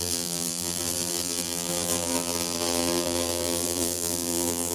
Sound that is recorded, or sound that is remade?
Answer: remade